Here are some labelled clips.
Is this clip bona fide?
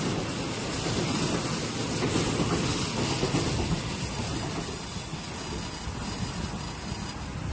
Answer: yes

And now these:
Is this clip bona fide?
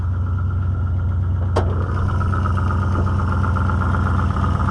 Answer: yes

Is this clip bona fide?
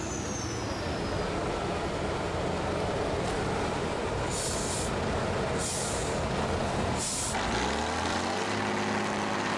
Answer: yes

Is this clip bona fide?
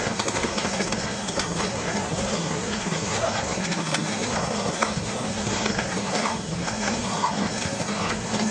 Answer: no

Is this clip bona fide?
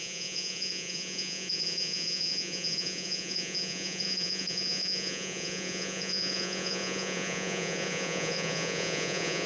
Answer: no